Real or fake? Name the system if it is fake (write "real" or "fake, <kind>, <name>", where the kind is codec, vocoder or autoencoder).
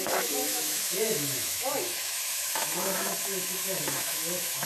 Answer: fake, autoencoder, DAC-VAE